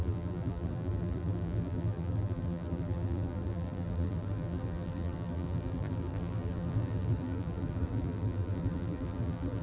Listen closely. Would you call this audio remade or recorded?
remade